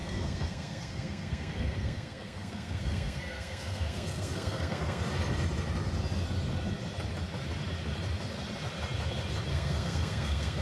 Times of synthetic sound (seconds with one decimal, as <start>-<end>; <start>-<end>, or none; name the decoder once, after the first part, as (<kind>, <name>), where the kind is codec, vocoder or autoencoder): 0.0-5.0 (codec, SNAC); 9.5-10.6